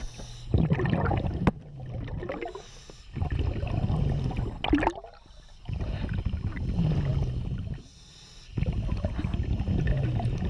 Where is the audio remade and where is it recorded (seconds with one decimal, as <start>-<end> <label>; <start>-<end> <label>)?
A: 0.0-10.5 recorded